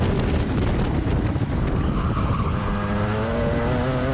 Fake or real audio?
real